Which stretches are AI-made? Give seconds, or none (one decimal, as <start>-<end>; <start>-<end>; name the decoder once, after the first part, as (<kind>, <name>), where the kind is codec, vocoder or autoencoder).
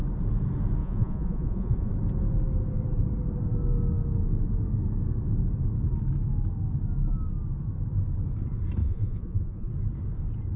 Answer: 0.8-1.9 (vocoder, Vocos); 8.8-9.7